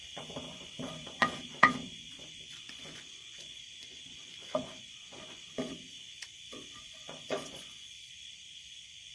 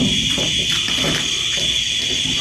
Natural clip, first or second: second